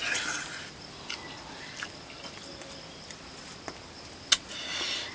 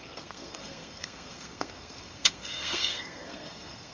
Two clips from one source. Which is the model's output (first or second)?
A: second